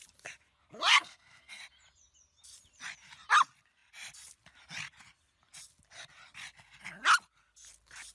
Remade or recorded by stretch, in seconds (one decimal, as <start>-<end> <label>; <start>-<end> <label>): 0.0-0.9 recorded; 0.9-1.6 remade; 1.6-8.1 recorded